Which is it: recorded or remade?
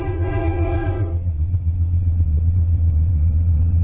remade